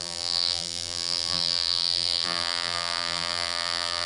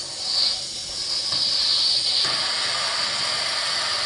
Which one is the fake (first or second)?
first